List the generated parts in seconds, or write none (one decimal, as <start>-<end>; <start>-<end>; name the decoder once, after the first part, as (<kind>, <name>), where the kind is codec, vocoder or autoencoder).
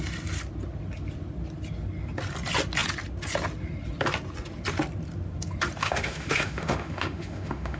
5.8-7.8 (autoencoder, DAC-VAE)